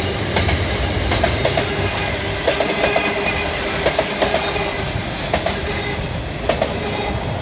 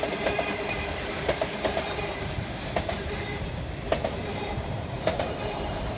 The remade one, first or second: second